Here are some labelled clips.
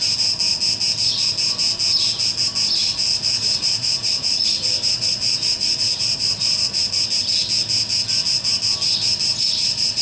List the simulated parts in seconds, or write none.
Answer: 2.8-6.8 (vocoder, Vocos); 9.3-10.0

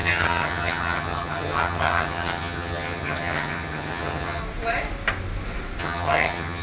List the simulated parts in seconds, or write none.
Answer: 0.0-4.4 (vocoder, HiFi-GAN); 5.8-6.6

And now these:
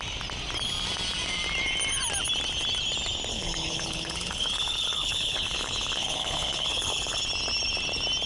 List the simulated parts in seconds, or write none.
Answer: 3.3-7.2 (codec, HILCodec)

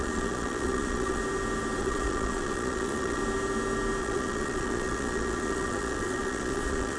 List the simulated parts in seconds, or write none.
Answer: 0.0-1.2 (vocoder, Vocos); 1.8-3.2; 4.0-7.0

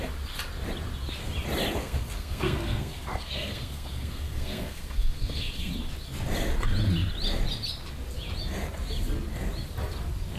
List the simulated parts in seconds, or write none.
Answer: 1.8-5.7 (codec, SNAC)

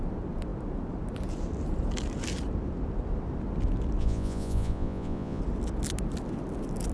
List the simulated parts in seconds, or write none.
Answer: 4.0-5.4 (vocoder, Vocos)

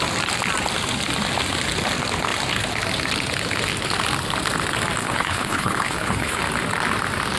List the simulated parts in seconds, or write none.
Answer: 5.0-6.4 (codec, HILCodec)